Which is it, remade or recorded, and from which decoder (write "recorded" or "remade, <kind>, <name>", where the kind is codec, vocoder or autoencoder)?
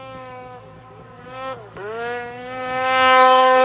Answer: remade, codec, DAC